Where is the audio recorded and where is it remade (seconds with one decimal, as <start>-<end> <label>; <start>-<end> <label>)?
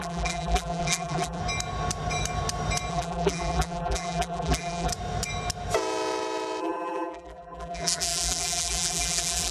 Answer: 0.0-1.4 remade; 1.4-2.9 recorded; 2.9-4.9 remade; 4.9-6.6 recorded; 6.6-9.5 remade